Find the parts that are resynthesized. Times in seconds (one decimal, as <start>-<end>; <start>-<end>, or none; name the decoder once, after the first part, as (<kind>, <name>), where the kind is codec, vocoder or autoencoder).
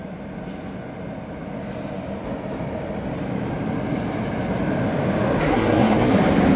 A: 5.4-6.1 (codec, SNAC)